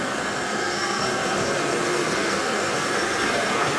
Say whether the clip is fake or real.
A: fake